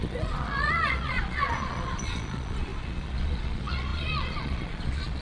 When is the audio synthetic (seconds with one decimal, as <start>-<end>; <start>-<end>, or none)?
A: 0.0-5.2